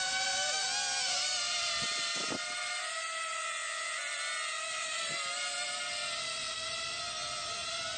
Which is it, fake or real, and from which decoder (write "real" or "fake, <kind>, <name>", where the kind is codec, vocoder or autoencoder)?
real